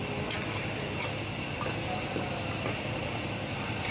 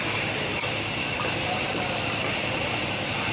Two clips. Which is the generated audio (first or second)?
second